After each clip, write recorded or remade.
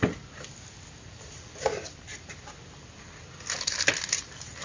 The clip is recorded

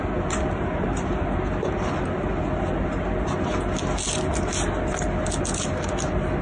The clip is recorded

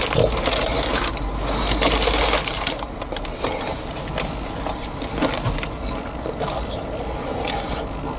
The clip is recorded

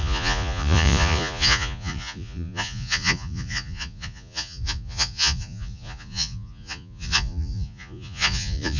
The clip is remade